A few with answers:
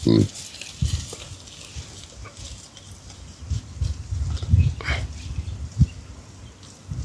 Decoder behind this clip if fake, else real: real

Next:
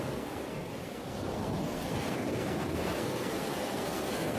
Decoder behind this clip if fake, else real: fake, codec, SNAC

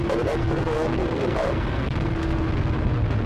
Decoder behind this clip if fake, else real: fake, codec, SNAC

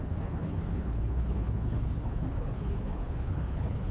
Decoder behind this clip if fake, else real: fake, codec, HILCodec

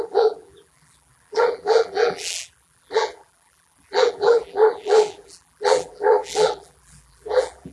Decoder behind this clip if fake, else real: fake, vocoder, BigVGAN v2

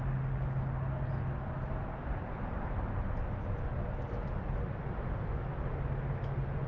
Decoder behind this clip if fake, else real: real